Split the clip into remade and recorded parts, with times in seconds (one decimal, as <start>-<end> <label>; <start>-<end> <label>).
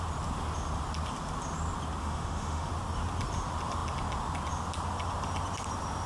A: 0.0-2.0 recorded; 2.0-2.7 remade; 2.7-6.1 recorded